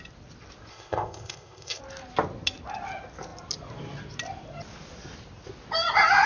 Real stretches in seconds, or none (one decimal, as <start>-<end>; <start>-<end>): 0.0-0.7; 1.8-6.3